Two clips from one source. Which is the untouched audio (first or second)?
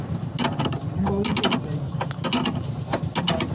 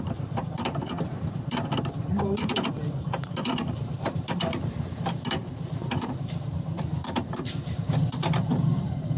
first